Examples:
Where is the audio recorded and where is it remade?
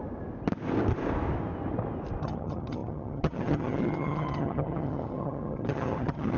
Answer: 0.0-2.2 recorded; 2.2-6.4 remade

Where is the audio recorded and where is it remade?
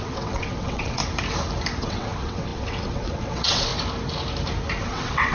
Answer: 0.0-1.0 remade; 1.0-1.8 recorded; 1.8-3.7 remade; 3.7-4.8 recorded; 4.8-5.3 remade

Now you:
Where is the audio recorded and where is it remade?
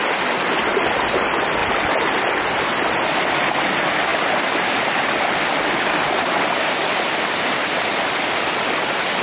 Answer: 0.0-1.6 recorded; 1.6-2.3 remade; 2.3-9.2 recorded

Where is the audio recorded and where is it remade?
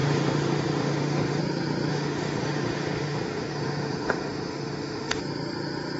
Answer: 0.0-1.4 remade; 1.4-1.9 recorded; 1.9-5.2 remade; 5.2-6.0 recorded